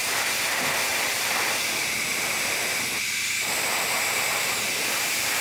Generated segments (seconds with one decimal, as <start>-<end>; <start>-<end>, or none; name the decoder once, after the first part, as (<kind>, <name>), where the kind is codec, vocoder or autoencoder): 0.9-2.9 (vocoder, BigVGAN v2); 4.3-5.4

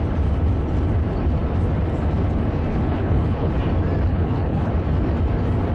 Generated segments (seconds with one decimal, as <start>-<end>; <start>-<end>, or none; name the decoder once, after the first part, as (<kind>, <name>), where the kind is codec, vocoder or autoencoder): 2.7-3.5 (codec, HILCodec); 4.1-4.7

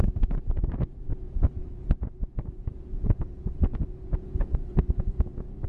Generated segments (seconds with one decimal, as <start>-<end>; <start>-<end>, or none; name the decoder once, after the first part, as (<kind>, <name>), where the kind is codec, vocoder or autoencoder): 1.1-4.5 (vocoder, Vocos)

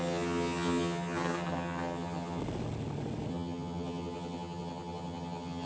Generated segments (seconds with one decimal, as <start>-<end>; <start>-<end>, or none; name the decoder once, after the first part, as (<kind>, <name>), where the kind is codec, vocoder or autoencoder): 0.0-2.4 (vocoder, HiFi-GAN); 3.3-5.7

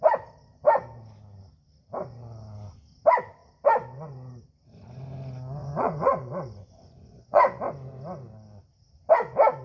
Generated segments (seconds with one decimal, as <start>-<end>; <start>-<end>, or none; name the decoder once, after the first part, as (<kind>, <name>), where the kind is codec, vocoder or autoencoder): 5.6-7.6 (vocoder, Vocos)

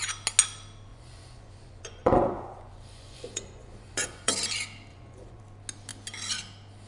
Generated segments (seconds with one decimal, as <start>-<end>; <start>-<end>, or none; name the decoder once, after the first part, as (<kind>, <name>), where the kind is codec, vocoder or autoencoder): 0.9-4.3 (vocoder, Vocos); 4.9-5.4